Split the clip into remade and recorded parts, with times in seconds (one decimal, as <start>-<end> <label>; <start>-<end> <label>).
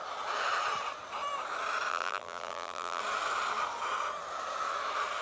0.0-1.9 recorded; 1.9-3.0 remade; 3.0-5.2 recorded